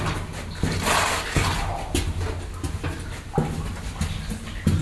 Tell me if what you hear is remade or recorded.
recorded